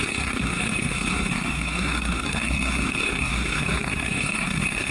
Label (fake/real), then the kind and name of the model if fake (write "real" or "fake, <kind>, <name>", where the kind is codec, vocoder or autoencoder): fake, codec, SNAC